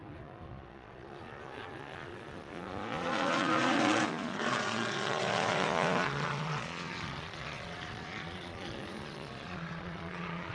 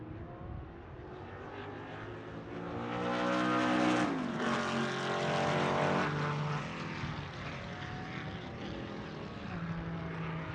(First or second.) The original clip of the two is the second